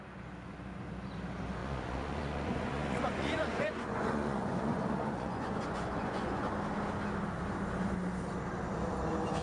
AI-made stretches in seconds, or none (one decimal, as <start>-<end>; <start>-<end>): 1.6-6.5